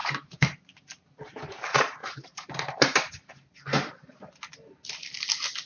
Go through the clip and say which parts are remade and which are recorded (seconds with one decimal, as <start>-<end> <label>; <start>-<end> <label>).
0.0-0.6 remade; 0.6-2.0 recorded; 2.0-4.3 remade; 4.3-5.7 recorded